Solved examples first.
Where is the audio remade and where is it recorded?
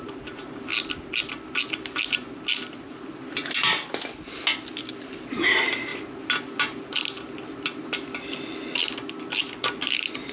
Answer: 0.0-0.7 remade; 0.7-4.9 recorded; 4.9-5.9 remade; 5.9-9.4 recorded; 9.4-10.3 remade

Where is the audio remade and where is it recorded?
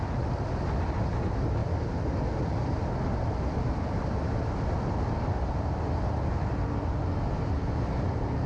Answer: 0.0-8.5 recorded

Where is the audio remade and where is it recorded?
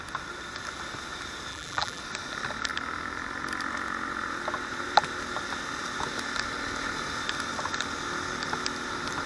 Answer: 0.0-1.5 recorded; 1.5-2.0 remade; 2.0-9.3 recorded